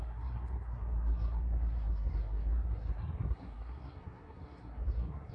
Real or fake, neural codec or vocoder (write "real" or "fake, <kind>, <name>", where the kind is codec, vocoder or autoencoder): fake, codec, SNAC